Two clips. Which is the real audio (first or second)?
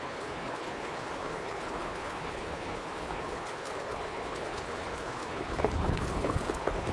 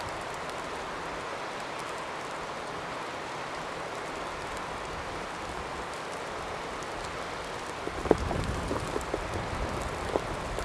second